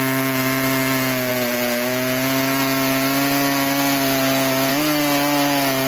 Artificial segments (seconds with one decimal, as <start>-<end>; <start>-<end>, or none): none

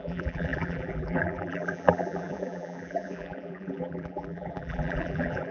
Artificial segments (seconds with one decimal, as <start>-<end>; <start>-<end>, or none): 0.0-5.5

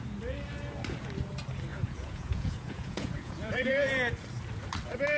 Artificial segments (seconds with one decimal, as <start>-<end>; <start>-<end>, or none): 1.7-3.9

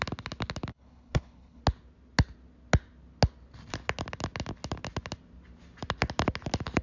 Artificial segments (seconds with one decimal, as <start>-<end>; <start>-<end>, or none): 0.7-1.6

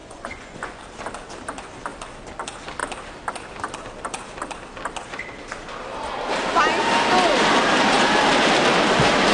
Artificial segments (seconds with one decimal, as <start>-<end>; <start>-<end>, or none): 0.0-0.8